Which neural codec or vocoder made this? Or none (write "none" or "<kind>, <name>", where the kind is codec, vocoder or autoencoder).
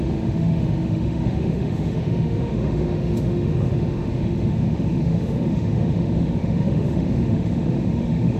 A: autoencoder, DAC-VAE